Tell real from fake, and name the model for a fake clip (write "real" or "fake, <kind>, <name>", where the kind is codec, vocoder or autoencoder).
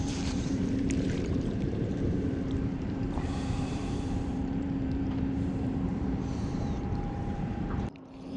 fake, vocoder, BigVGAN v2